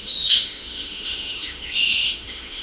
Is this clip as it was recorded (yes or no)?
no